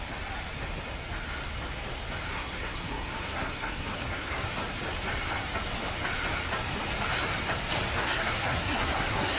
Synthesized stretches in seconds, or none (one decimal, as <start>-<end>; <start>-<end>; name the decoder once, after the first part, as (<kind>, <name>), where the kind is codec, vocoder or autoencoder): 2.3-4.5 (codec, SNAC); 8.0-9.4